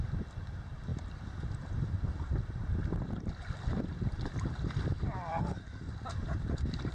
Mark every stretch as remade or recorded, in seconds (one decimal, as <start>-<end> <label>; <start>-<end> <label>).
0.0-6.9 remade